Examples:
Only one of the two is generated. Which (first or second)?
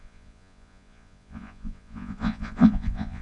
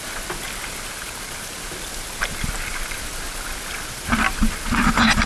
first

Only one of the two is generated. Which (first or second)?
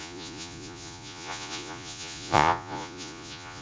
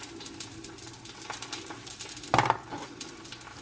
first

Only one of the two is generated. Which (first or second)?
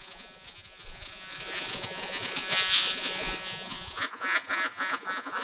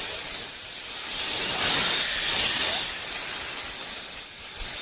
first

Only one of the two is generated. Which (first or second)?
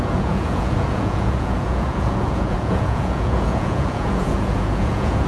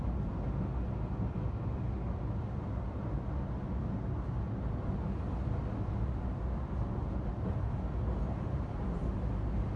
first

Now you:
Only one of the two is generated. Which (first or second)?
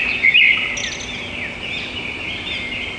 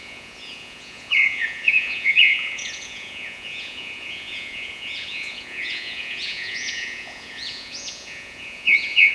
second